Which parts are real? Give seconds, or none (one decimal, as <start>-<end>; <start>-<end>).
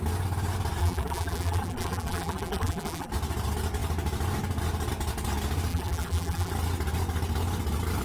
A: 0.0-0.8; 3.1-5.7; 6.5-8.0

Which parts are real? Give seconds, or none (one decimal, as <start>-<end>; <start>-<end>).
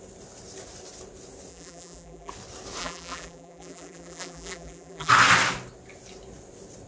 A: 0.0-1.5; 2.3-2.8; 5.1-6.9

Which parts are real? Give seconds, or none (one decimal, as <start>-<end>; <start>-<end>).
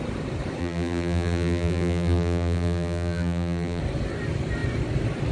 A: 0.0-0.6; 3.8-5.3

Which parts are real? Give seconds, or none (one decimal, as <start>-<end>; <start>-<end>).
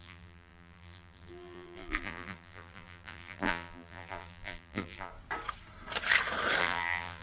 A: 5.1-6.6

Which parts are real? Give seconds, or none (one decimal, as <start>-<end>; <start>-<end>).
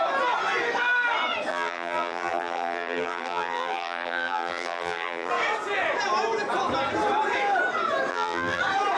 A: 0.0-1.5; 5.3-8.1; 8.6-9.0